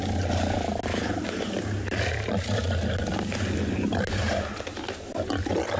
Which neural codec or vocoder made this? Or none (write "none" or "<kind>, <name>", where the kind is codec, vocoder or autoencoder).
none